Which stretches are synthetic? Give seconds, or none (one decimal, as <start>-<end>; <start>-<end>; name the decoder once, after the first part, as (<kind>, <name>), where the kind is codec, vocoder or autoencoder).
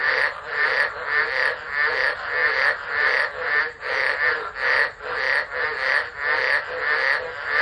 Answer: 0.0-1.0 (vocoder, BigVGAN v2); 2.4-4.2